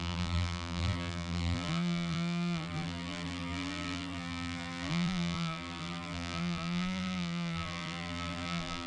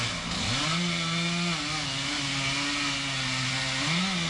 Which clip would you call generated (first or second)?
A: first